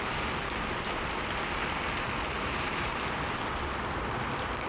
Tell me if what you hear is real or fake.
real